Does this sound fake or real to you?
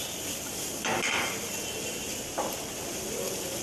real